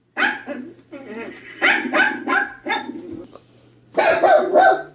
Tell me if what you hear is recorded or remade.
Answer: recorded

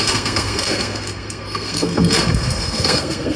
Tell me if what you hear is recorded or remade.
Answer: remade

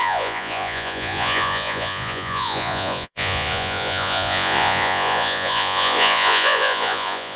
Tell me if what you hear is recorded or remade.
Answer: remade